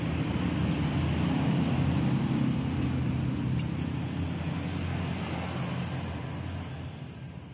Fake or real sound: real